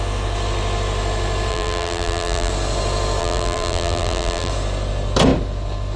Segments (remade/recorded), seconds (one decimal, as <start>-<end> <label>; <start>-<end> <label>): 0.0-1.5 recorded; 1.5-2.5 remade; 2.5-3.2 recorded; 3.2-4.5 remade; 4.5-6.0 recorded